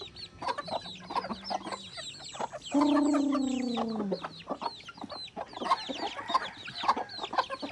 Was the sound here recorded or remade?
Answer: recorded